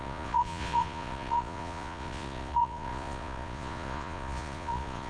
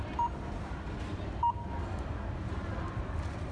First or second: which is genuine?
second